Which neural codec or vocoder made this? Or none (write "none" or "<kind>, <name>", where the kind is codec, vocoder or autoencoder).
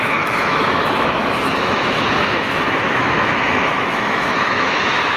autoencoder, DAC-VAE